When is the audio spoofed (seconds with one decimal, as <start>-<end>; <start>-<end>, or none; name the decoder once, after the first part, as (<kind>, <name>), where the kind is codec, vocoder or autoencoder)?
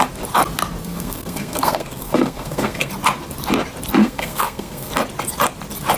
0.8-2.9 (codec, SNAC); 4.0-4.9